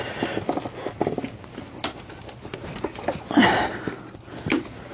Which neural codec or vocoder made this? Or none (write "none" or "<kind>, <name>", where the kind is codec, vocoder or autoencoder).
none